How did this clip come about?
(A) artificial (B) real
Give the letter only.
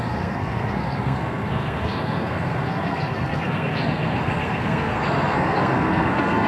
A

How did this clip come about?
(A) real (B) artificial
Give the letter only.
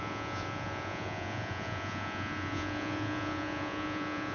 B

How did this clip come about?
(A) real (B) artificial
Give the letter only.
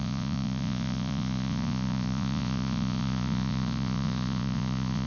B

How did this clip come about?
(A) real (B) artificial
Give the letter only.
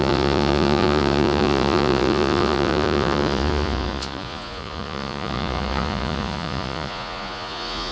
B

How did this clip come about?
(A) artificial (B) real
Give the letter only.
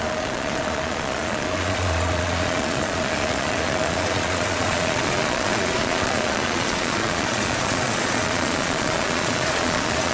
A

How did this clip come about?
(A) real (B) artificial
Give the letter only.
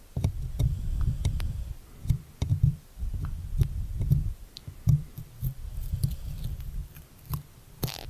B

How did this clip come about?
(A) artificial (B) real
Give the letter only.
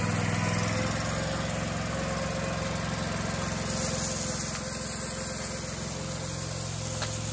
B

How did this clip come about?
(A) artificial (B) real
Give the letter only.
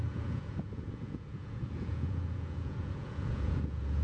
A